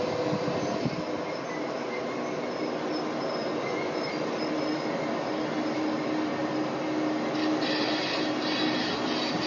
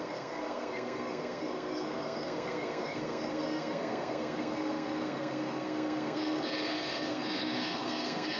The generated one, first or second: second